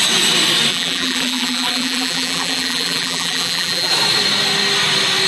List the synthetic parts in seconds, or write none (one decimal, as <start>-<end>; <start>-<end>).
0.7-3.9